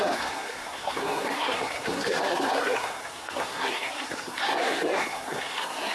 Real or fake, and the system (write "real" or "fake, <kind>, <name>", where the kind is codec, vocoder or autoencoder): fake, codec, SNAC